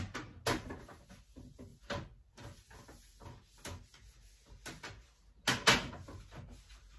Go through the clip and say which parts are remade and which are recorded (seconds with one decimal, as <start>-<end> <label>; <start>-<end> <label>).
0.0-7.0 recorded